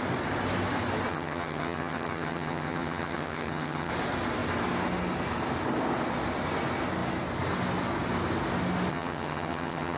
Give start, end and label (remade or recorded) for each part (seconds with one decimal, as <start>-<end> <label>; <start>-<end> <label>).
0.0-1.1 recorded; 1.1-3.9 remade; 3.9-8.9 recorded; 8.9-10.0 remade